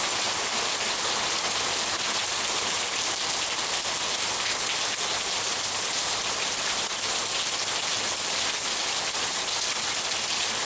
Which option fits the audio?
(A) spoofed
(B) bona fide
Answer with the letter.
B